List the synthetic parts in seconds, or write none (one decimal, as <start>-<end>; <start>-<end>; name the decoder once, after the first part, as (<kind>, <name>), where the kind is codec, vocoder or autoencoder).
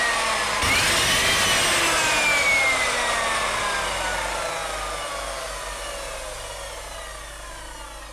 none